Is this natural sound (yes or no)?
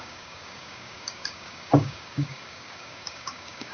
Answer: no